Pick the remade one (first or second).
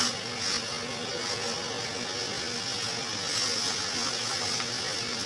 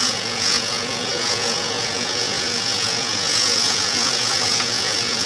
second